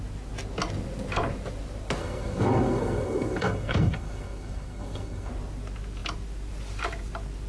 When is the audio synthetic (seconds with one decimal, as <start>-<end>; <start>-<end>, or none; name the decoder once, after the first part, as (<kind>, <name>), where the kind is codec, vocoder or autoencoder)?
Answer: 2.0-5.3 (codec, SNAC)